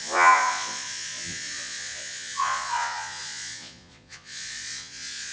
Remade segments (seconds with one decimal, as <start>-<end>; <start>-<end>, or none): 0.0-5.3